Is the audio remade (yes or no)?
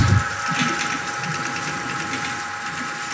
no